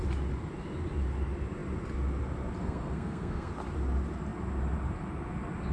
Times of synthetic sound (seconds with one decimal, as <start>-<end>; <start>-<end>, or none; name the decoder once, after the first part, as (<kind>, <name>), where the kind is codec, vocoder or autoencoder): 2.6-3.5 (codec, SNAC)